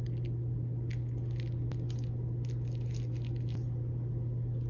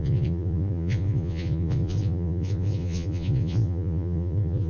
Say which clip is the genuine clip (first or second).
first